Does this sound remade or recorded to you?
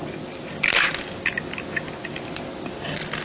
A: recorded